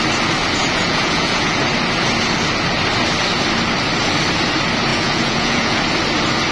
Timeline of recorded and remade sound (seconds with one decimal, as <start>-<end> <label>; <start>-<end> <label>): 0.0-0.6 recorded; 0.6-1.6 remade; 1.6-4.9 recorded; 4.9-5.8 remade; 5.8-6.5 recorded